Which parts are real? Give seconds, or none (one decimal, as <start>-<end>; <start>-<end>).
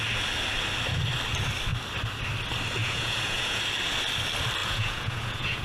0.0-2.8; 3.6-4.6